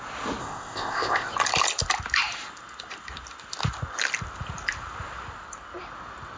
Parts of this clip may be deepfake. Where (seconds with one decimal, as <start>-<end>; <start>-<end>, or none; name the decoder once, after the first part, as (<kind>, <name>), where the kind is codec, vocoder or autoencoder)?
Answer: 0.4-1.3 (codec, ZipCodec)